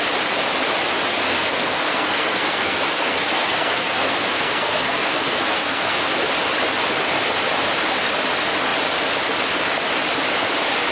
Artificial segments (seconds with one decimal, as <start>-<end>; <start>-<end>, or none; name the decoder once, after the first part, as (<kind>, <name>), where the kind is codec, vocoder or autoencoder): 1.1-6.1 (codec, SNAC)